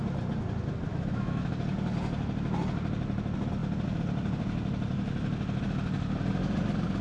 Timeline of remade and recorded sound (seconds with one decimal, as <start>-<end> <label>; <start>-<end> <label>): 0.0-0.9 recorded; 0.9-1.5 remade; 1.5-7.0 recorded